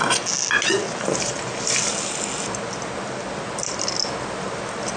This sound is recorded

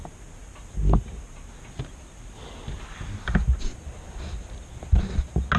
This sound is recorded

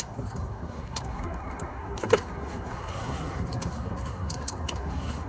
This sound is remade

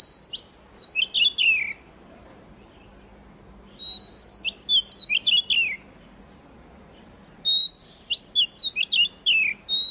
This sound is recorded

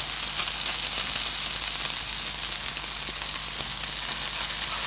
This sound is recorded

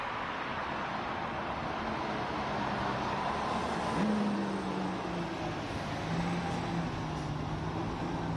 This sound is recorded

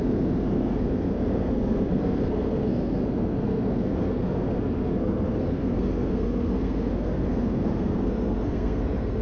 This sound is remade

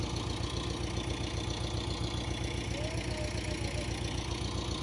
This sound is recorded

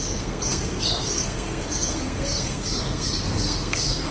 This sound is remade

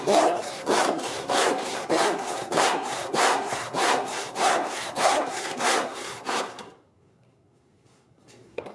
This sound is remade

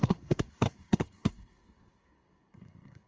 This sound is remade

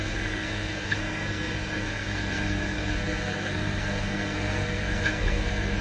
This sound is remade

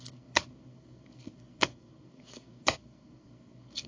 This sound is remade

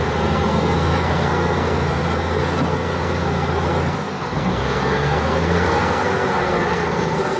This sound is remade